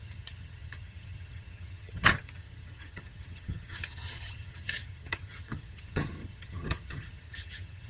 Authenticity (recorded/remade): remade